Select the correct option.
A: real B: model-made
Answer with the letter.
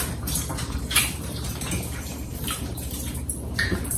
B